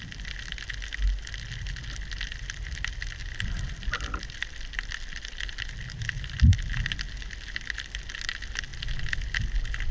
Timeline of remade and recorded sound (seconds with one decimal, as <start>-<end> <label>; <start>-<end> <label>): 0.0-3.2 recorded; 3.2-6.7 remade; 6.7-9.9 recorded